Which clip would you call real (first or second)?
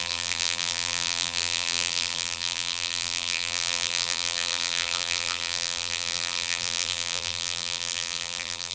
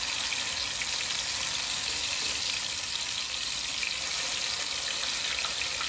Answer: second